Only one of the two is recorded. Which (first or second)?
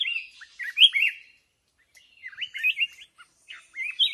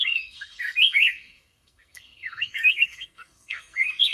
first